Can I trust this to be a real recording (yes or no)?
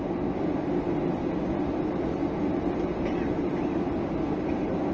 yes